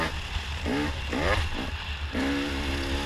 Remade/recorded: recorded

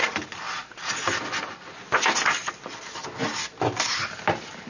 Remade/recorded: recorded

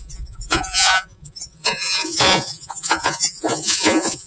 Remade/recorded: remade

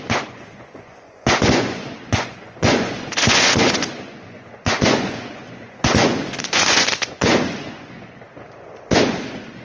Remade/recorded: remade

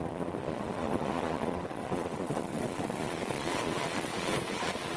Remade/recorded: remade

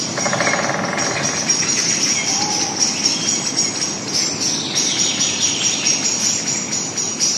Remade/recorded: recorded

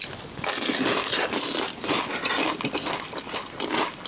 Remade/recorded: recorded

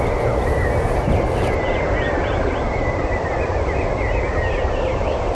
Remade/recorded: recorded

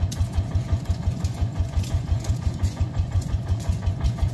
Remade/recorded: remade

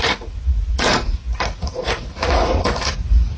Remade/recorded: remade